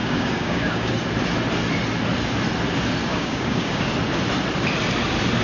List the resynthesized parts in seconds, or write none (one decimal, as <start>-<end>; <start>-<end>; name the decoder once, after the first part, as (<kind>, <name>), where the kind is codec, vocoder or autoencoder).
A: 0.0-0.9 (codec, DAC); 3.1-3.9